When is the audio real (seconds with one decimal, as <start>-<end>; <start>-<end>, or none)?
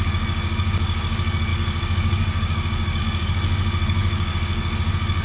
none